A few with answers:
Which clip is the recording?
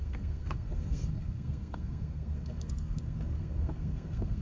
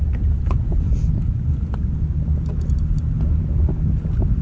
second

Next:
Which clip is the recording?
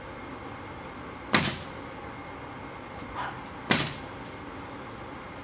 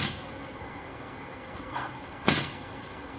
first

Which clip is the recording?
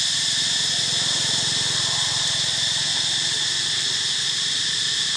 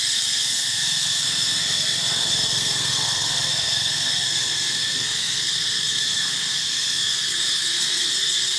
first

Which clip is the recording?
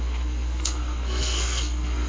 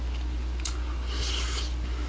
second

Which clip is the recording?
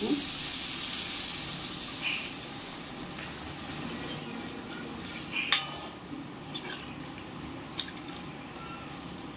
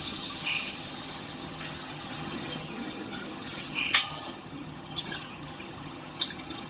first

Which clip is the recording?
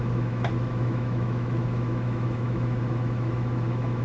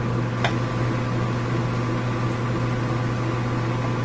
second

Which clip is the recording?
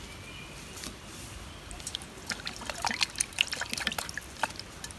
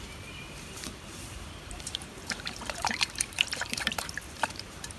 first